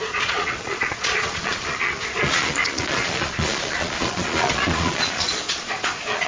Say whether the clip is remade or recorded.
remade